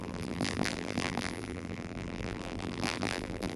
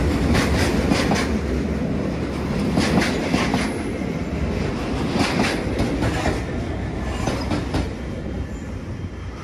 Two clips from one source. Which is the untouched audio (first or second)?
second